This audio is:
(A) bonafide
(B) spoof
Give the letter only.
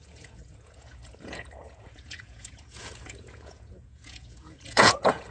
B